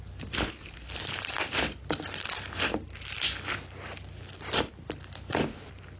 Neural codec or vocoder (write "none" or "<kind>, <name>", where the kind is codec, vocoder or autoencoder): none